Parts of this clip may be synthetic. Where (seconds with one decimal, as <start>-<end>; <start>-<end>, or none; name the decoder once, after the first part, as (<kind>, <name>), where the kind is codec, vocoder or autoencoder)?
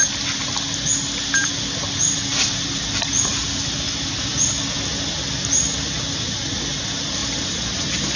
none